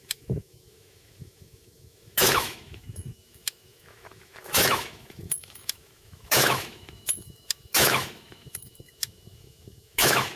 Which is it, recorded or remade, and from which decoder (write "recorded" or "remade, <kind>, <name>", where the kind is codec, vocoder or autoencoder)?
remade, autoencoder, DAC-VAE